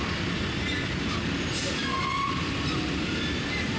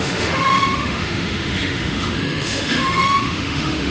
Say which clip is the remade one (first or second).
second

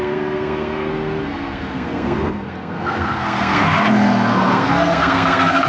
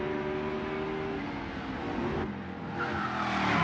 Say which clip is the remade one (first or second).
first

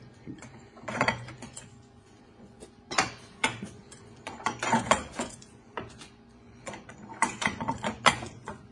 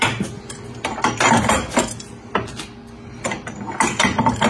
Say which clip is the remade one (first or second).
first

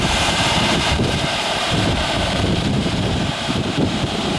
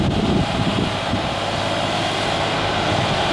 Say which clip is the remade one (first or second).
first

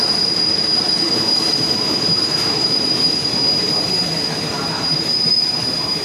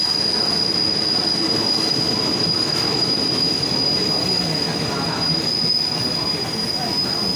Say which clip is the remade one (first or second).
first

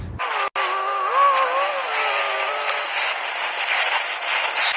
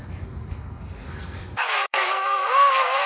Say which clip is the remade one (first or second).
second